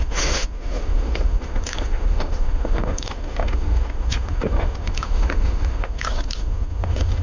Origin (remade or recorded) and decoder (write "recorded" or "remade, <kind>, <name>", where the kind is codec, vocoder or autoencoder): remade, autoencoder, DAC-VAE